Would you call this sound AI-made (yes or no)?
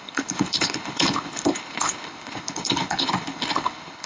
yes